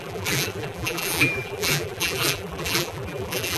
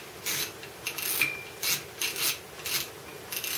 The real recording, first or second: second